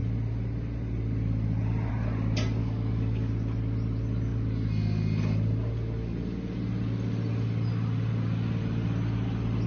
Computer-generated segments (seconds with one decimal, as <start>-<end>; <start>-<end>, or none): 2.6-3.3